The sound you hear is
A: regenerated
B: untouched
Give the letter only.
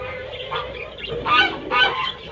A